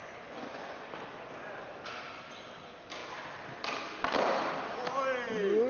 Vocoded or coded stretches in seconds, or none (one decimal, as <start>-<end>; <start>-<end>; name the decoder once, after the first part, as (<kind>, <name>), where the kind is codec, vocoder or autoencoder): 0.0-0.9 (vocoder, Vocos)